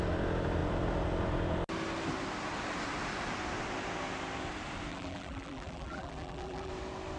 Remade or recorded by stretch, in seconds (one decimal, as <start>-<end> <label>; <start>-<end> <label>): 0.0-4.9 recorded; 4.9-6.7 remade; 6.7-7.2 recorded

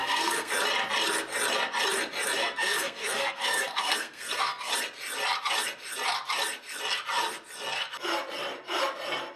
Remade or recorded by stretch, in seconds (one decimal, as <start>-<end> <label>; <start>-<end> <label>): 0.0-0.5 remade; 0.5-2.4 recorded; 2.4-4.7 remade; 4.7-9.4 recorded

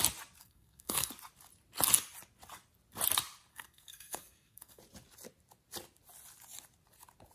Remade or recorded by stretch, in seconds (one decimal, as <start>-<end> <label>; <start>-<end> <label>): 0.0-0.4 recorded; 0.4-1.1 remade; 1.1-3.5 recorded; 3.5-4.8 remade; 4.8-7.3 recorded

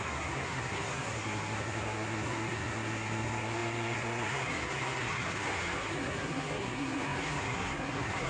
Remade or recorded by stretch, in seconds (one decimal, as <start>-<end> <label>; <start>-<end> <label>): 0.0-8.3 remade

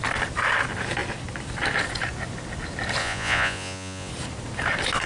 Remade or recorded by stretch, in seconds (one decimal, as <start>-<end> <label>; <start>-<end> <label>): 0.0-3.0 recorded; 3.0-4.1 remade; 4.1-5.1 recorded